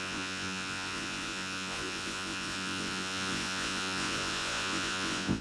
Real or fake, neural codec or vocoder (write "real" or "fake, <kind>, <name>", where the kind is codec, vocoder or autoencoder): fake, vocoder, Vocos